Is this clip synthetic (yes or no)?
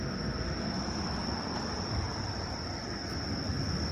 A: no